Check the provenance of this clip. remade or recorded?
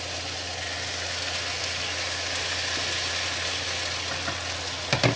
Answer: recorded